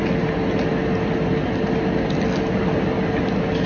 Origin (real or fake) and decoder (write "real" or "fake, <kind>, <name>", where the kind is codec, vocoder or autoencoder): real